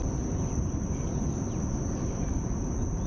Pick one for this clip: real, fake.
real